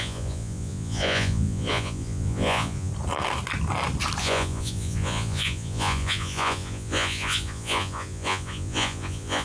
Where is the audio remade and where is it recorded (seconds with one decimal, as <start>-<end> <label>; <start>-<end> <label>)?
0.0-2.9 remade; 2.9-4.2 recorded; 4.2-9.4 remade